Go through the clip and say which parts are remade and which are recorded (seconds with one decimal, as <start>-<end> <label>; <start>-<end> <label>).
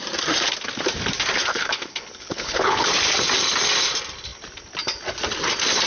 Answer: 0.0-1.5 recorded; 1.5-2.8 remade; 2.8-5.9 recorded